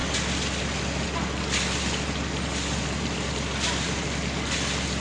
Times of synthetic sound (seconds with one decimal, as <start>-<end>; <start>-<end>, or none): none